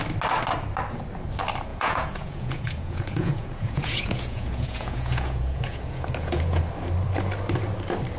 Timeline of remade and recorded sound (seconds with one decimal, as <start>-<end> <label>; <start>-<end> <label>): 0.0-1.7 recorded; 1.7-6.6 remade; 6.6-8.2 recorded